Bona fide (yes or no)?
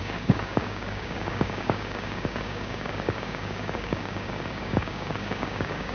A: no